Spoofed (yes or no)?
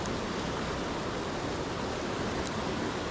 no